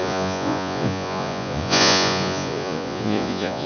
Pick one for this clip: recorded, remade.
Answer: remade